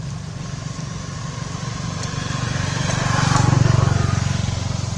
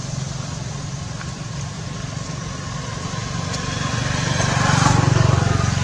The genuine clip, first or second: first